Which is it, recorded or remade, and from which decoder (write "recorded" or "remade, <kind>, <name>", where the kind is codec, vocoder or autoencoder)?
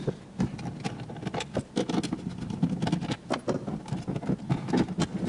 recorded